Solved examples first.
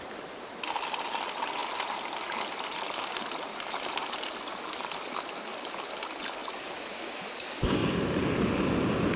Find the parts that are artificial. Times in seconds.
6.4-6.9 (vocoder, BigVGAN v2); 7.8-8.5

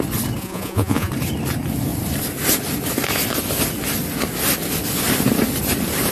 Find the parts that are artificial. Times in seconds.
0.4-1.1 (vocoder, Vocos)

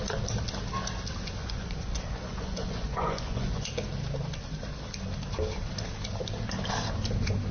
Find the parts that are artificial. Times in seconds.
1.4-3.7 (vocoder, Vocos)